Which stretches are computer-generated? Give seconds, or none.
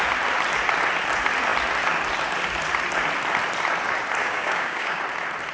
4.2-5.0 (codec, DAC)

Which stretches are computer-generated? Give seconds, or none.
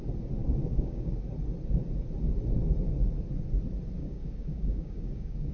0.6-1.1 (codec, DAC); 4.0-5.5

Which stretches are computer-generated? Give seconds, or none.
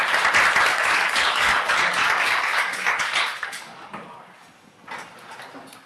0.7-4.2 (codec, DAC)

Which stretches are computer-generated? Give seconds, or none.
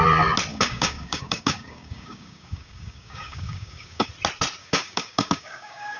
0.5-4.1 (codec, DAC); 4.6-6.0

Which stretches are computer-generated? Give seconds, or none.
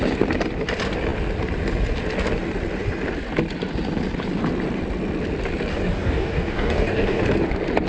5.7-7.2 (codec, DAC)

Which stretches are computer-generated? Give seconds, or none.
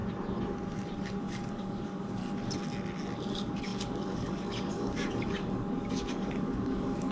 1.2-2.2 (codec, DAC); 3.3-7.1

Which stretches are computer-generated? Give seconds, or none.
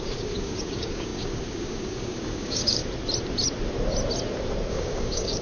0.0-2.8 (codec, DAC); 4.7-5.4